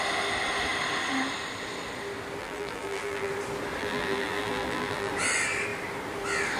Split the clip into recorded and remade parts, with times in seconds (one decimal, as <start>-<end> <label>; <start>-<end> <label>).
0.0-2.4 recorded; 2.4-3.3 remade; 3.3-3.8 recorded; 3.8-5.1 remade; 5.1-6.6 recorded